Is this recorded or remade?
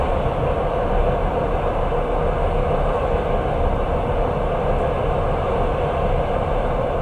recorded